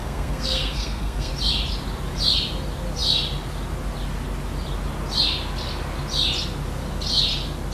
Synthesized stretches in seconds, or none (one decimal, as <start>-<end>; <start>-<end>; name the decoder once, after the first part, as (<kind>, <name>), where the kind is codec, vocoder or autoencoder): 0.0-1.3 (codec, SNAC)